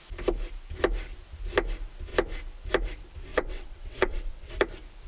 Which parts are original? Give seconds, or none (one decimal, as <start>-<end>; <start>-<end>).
0.0-3.3; 4.5-5.1